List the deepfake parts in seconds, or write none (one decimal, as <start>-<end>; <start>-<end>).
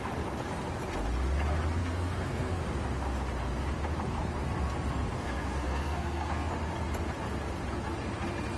1.8-2.6; 5.0-6.5